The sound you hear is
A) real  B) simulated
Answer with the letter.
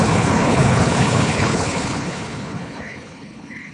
B